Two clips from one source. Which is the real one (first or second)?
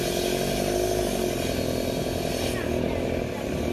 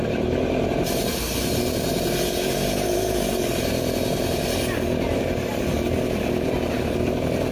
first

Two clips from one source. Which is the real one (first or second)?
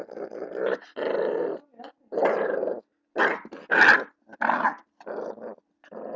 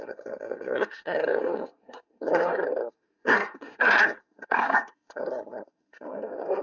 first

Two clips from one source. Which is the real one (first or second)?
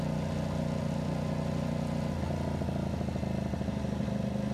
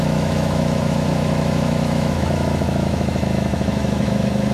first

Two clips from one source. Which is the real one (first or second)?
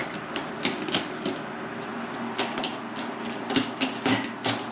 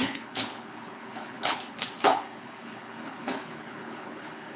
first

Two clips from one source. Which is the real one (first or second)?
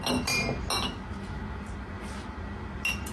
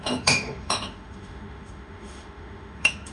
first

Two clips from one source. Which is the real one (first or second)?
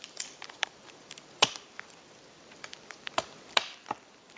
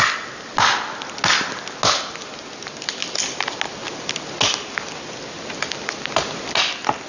second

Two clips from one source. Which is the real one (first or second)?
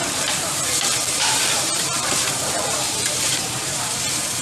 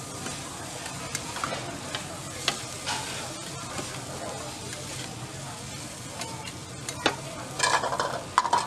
second